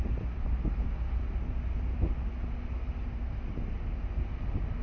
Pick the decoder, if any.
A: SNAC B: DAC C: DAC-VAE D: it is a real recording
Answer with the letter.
D